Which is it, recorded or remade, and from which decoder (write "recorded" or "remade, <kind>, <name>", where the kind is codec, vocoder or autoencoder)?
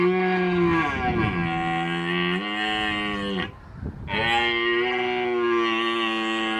recorded